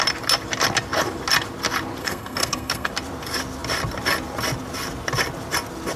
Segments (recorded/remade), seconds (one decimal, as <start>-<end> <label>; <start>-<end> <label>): 0.0-2.0 recorded; 2.0-2.9 remade; 2.9-6.0 recorded

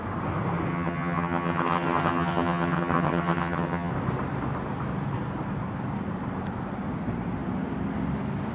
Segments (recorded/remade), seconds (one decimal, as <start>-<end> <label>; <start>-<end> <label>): 0.0-0.7 recorded; 0.7-3.9 remade; 3.9-8.5 recorded

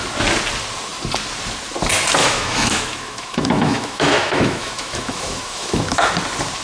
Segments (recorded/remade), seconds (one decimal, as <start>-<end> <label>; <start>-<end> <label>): 0.0-2.2 recorded; 2.2-6.1 remade; 6.1-6.6 recorded

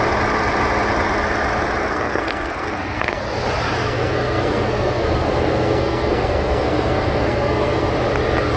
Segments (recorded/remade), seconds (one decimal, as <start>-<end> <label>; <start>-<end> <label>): 0.0-1.8 recorded; 1.8-3.2 remade; 3.2-3.8 recorded; 3.8-7.9 remade; 7.9-8.6 recorded

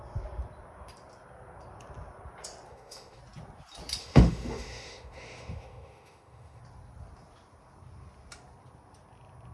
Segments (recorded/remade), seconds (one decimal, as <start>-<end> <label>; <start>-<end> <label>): 0.0-2.7 recorded; 2.7-3.2 remade; 3.2-4.0 recorded; 4.0-6.6 remade; 6.6-9.5 recorded

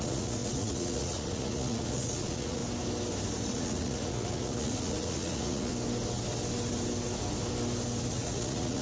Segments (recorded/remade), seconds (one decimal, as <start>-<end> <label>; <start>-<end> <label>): 0.0-2.6 remade; 2.6-3.5 recorded; 3.5-5.7 remade; 5.7-8.1 recorded; 8.1-8.8 remade